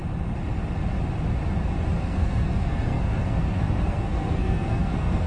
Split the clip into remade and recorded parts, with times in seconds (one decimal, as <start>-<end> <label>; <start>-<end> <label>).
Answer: 0.0-2.0 recorded; 2.0-5.3 remade